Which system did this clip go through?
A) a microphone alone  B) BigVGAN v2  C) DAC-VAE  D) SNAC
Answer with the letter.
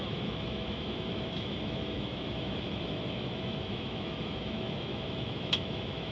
C